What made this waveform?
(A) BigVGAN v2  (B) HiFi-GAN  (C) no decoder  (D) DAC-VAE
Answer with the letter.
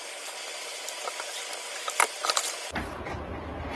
C